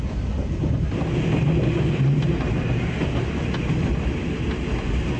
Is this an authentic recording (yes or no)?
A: yes